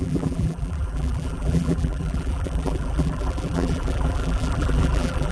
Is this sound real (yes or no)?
no